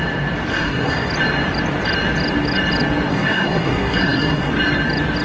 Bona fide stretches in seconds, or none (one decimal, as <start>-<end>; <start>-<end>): 0.0-0.5; 1.1-3.1; 4.5-5.2

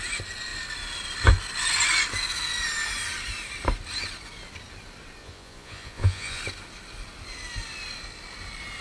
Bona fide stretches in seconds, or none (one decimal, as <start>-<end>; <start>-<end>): 0.0-5.2; 6.4-8.8

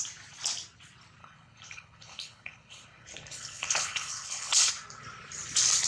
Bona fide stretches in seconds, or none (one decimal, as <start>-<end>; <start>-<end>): 0.0-1.2; 4.7-5.9

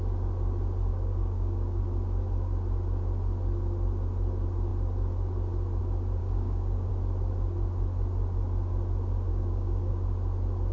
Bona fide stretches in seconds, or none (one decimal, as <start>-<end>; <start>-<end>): 0.0-0.9; 1.8-6.2; 6.9-9.3; 9.9-10.7

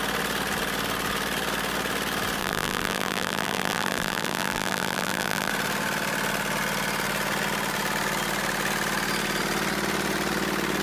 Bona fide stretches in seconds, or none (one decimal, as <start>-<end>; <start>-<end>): 0.0-2.4; 5.5-10.8